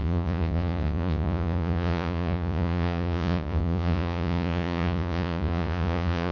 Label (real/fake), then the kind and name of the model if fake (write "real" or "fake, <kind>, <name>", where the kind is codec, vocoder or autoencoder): fake, vocoder, Vocos